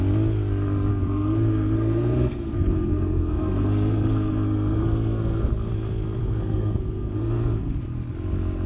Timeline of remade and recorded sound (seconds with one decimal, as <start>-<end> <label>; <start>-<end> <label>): 0.0-0.9 recorded; 0.9-5.5 remade; 5.5-6.2 recorded; 6.2-7.8 remade; 7.8-8.7 recorded